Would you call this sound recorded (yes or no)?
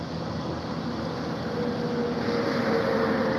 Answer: yes